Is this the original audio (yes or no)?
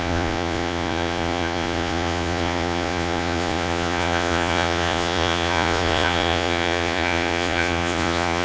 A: no